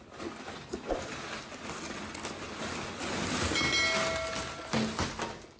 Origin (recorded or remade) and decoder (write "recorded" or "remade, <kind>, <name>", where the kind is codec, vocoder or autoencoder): recorded